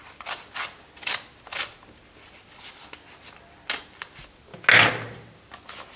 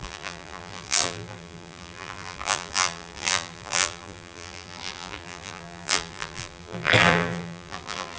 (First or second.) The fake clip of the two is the second